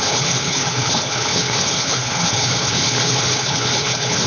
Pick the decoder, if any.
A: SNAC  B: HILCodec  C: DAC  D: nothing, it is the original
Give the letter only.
B